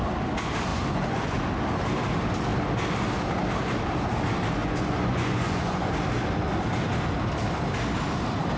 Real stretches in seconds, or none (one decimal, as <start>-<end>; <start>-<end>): 0.0-0.7; 1.4-4.6; 5.9-8.6